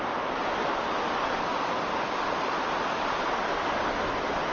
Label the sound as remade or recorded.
recorded